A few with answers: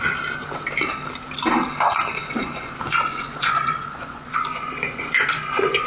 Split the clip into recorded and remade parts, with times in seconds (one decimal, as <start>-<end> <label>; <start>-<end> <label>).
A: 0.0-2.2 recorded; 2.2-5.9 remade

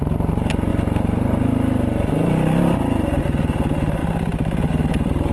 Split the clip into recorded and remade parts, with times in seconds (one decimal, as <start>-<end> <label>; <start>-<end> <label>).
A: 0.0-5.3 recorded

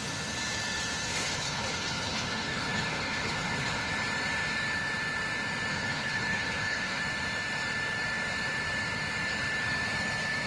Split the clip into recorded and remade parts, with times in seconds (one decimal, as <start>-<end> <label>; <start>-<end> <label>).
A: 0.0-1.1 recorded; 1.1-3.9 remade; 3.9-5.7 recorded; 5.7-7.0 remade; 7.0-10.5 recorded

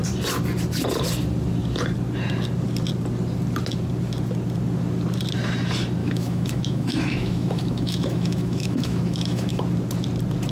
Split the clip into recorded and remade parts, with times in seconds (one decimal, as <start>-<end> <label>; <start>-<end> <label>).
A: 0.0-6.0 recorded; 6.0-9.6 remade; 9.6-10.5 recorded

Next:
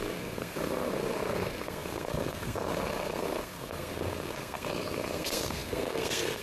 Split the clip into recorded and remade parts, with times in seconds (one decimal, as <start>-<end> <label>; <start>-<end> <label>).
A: 0.0-6.4 remade

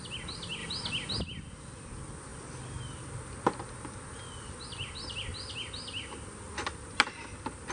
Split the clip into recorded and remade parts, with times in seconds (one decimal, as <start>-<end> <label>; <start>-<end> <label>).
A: 0.0-7.7 recorded

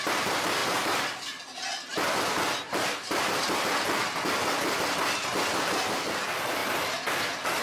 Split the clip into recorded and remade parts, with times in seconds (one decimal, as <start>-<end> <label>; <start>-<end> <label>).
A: 0.0-7.6 recorded